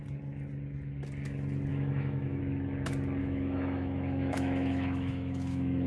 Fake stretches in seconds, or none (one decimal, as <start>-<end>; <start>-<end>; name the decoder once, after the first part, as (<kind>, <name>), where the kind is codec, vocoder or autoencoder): 1.7-2.4 (autoencoder, DAC-VAE); 3.2-5.9